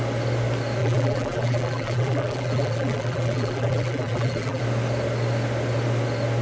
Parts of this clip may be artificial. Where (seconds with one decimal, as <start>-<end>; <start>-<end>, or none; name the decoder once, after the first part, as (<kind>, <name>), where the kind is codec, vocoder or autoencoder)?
0.8-4.6 (vocoder, BigVGAN v2)